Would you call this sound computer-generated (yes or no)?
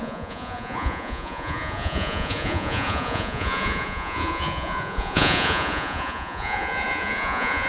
yes